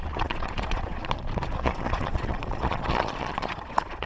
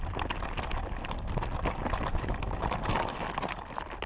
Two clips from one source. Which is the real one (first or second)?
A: second